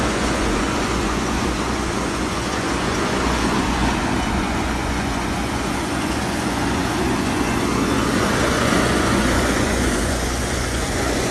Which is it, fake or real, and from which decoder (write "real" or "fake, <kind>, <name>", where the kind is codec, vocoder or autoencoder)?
fake, vocoder, Vocos